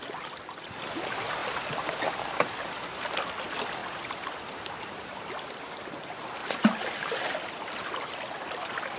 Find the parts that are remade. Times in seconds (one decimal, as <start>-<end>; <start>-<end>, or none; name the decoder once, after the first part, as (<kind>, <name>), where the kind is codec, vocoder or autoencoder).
3.8-5.5 (vocoder, BigVGAN v2); 6.4-7.0